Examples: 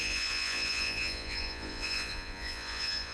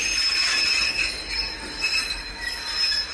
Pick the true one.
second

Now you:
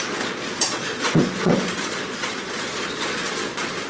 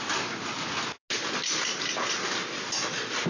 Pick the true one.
second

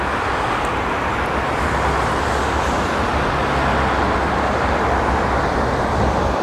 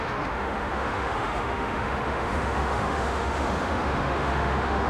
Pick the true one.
first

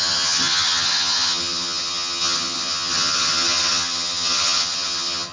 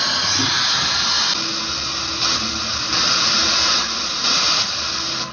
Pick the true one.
second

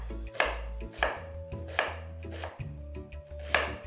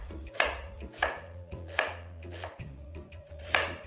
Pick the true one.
first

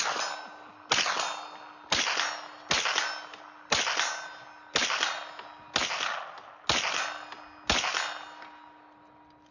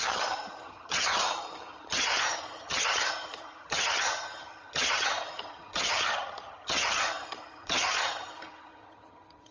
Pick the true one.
first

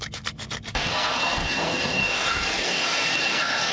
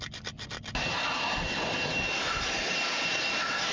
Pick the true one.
second